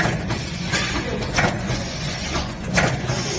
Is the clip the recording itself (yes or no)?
no